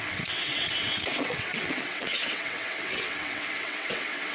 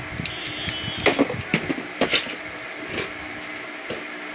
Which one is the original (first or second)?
second